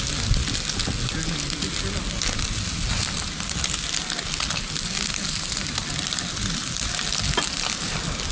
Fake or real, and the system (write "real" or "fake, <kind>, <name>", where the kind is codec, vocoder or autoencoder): real